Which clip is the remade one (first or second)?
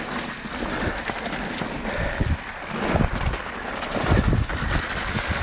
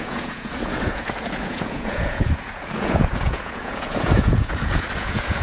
second